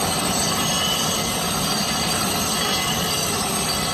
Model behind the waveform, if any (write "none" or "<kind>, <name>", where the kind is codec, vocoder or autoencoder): vocoder, BigVGAN v2